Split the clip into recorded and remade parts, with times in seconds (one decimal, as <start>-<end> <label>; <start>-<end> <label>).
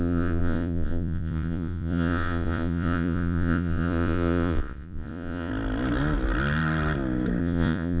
0.0-5.5 remade; 5.5-7.4 recorded; 7.4-8.0 remade